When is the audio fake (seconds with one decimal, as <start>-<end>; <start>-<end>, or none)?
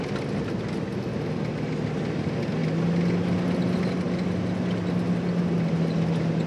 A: none